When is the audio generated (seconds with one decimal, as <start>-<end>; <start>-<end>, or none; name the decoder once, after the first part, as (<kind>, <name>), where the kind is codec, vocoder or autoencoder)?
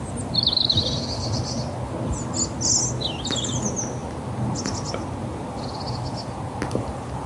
none